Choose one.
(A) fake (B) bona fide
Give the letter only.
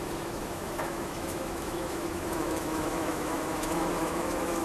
A